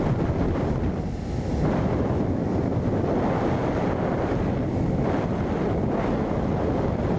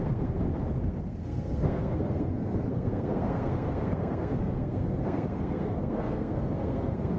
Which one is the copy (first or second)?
second